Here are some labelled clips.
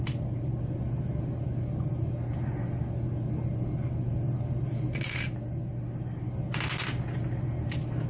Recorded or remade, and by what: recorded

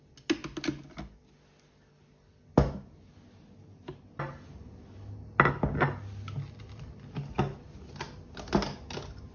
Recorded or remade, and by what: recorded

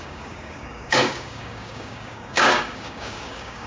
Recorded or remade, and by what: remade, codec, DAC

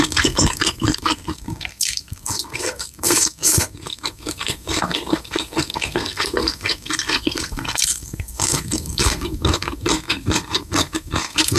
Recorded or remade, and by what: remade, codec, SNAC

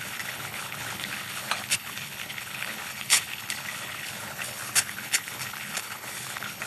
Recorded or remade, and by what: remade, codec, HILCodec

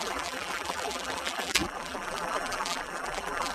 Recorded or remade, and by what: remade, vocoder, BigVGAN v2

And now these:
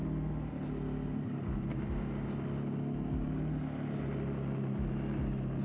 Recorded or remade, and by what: recorded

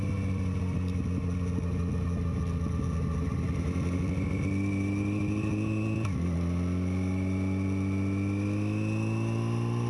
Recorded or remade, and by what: recorded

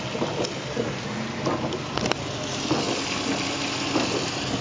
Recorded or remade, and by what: recorded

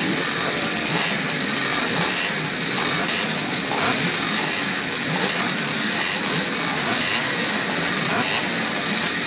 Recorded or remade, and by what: recorded